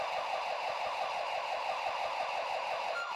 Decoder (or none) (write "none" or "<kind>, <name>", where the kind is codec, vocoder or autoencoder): vocoder, BigVGAN v2